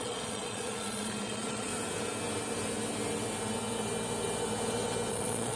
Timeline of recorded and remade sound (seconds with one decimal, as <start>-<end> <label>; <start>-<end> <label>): 0.0-1.7 remade; 1.7-5.1 recorded; 5.1-5.6 remade